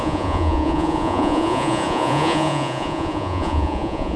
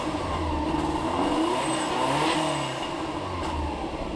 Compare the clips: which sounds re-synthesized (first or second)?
first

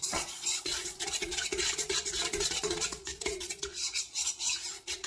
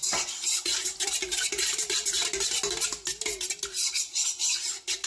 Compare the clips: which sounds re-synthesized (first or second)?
first